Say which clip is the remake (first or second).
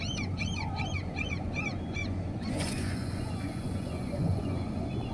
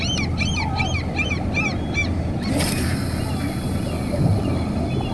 first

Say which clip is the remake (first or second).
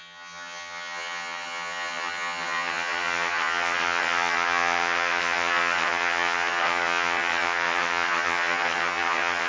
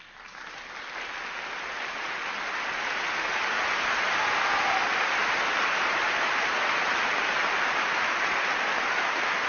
first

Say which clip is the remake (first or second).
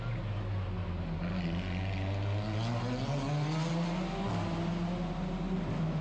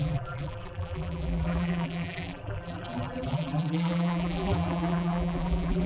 second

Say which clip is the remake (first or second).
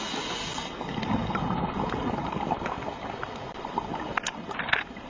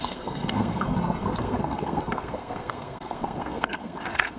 second